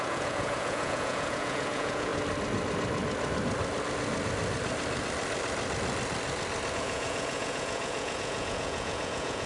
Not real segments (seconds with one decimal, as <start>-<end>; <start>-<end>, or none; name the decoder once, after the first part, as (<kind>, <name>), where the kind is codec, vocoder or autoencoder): 0.0-2.1 (vocoder, Vocos); 6.7-9.5